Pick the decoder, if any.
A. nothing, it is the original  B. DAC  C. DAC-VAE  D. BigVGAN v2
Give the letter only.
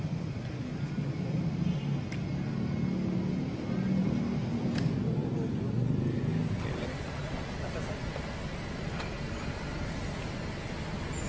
A